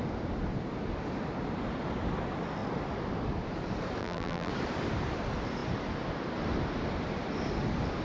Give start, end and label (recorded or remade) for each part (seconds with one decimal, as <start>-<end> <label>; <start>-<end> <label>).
0.0-4.0 recorded; 4.0-4.5 remade; 4.5-8.0 recorded